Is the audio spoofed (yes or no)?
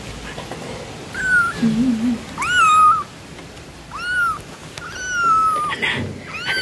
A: no